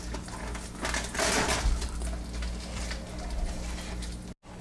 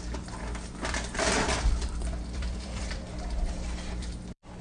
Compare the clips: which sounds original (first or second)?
first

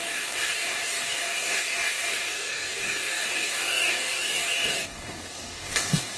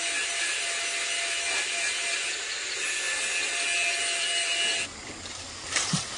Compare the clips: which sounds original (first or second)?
second